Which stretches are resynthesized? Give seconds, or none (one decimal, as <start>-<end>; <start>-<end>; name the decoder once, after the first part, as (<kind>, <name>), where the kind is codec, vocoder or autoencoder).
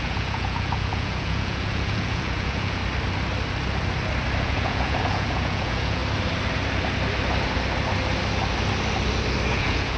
0.0-2.8 (vocoder, Vocos); 4.4-6.0; 9.5-10.0